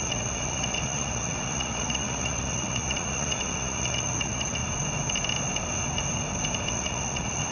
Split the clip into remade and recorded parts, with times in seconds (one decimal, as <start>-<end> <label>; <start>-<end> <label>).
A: 0.0-4.6 remade; 4.6-6.7 recorded; 6.7-7.5 remade